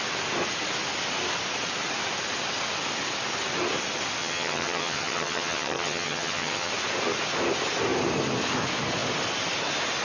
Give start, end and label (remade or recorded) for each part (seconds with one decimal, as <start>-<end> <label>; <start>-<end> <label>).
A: 0.0-4.2 recorded; 4.2-6.7 remade; 6.7-10.0 recorded